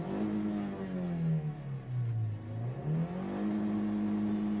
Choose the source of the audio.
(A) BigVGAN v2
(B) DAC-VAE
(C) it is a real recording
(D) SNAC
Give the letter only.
C